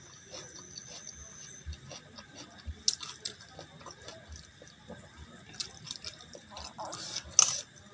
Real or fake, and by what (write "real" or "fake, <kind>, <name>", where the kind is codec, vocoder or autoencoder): real